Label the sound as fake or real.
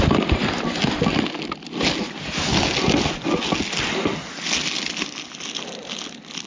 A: real